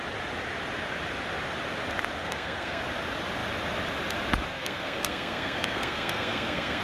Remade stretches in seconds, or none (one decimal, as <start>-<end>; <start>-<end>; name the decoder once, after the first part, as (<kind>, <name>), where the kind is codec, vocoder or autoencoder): 2.2-2.8 (codec, SNAC); 4.5-6.8